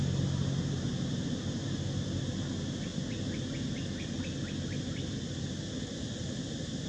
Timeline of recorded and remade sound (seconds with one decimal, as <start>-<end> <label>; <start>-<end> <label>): 0.0-6.9 recorded